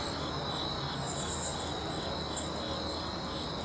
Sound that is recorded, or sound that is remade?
recorded